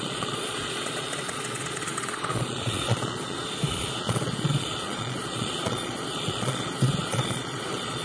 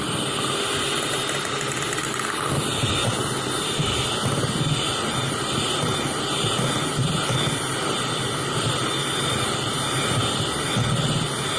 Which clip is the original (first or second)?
second